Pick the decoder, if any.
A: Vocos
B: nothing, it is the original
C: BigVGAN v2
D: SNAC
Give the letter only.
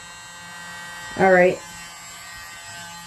B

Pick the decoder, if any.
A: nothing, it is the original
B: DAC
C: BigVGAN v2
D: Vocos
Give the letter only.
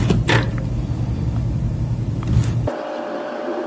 C